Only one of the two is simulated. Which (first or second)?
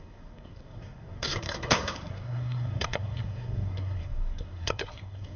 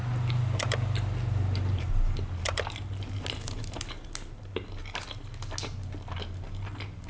first